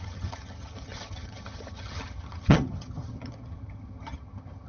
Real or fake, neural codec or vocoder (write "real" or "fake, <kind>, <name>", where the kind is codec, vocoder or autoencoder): fake, vocoder, HiFi-GAN